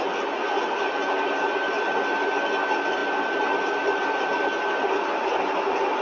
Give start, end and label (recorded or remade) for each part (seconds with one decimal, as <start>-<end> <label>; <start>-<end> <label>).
0.0-6.0 recorded